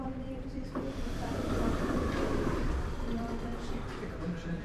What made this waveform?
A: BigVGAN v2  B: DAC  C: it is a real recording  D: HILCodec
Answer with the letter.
A